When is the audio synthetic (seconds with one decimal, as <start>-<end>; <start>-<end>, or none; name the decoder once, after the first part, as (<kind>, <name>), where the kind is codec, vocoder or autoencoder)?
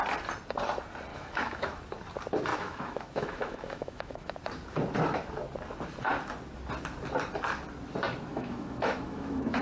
1.1-1.8 (autoencoder, DAC-VAE); 2.5-4.4; 8.3-9.6